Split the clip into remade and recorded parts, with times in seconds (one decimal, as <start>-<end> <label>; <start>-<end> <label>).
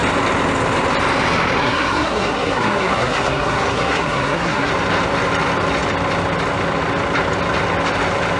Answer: 0.0-1.6 recorded; 1.6-4.7 remade; 4.7-8.4 recorded